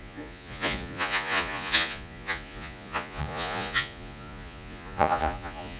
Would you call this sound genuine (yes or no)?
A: no